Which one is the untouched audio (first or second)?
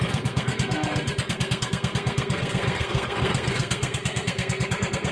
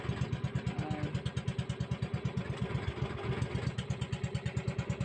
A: second